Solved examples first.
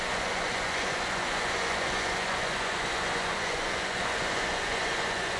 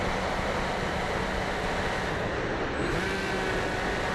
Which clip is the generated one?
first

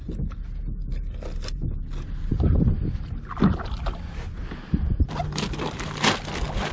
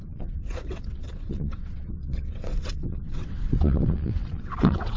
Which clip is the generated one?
second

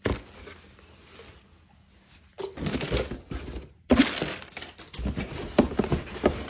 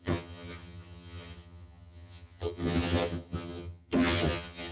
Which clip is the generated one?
second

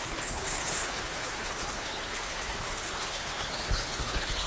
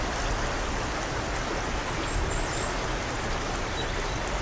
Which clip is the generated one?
first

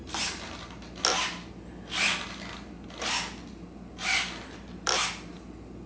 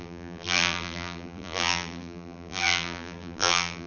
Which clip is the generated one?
second